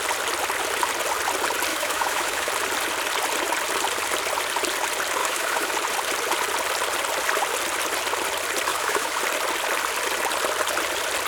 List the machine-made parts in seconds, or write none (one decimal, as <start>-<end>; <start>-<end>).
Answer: 1.7-2.5; 5.2-5.7; 8.7-9.2